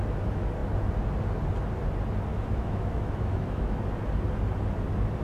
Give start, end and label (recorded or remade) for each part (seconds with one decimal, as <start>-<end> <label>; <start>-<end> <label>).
0.0-2.3 recorded; 2.3-3.8 remade; 3.8-5.2 recorded